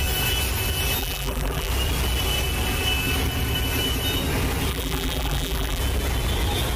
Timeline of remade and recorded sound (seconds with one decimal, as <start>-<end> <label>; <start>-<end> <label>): 0.0-1.0 recorded; 1.0-1.7 remade; 1.7-4.7 recorded; 4.7-5.8 remade; 5.8-6.8 recorded

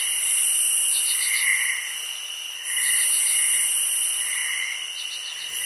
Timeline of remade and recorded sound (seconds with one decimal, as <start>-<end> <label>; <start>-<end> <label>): 0.0-5.7 recorded

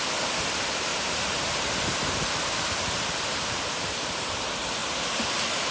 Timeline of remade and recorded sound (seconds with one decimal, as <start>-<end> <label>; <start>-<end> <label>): 0.0-0.9 recorded; 0.9-4.3 remade; 4.3-5.7 recorded

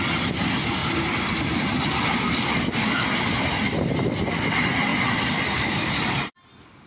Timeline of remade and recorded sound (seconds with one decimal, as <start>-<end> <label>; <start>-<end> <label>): 0.0-0.8 recorded; 0.8-2.1 remade; 2.1-4.9 recorded; 4.9-6.0 remade; 6.0-6.9 recorded

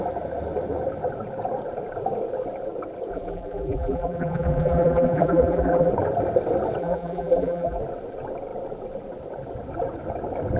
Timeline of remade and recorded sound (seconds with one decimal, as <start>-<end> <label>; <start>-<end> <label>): 0.0-3.1 recorded; 3.1-5.9 remade; 5.9-6.8 recorded; 6.8-7.8 remade; 7.8-10.6 recorded

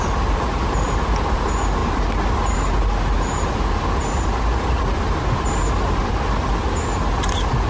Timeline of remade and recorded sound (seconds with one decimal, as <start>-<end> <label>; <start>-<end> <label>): 0.0-7.7 recorded

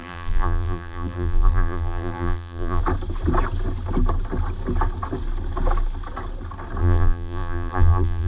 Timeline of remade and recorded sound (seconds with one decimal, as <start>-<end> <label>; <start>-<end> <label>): 0.0-2.8 remade; 2.8-6.8 recorded; 6.8-8.3 remade